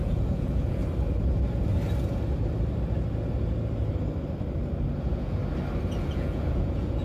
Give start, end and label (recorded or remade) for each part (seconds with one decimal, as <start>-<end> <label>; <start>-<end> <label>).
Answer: 0.0-0.8 remade; 0.8-5.0 recorded; 5.0-5.4 remade; 5.4-6.0 recorded; 6.0-7.0 remade